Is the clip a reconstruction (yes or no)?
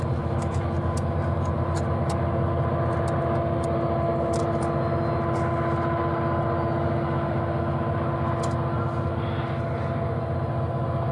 no